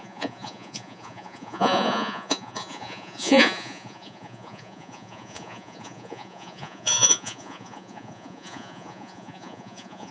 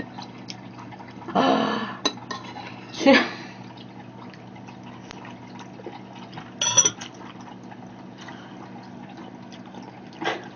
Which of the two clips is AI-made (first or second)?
first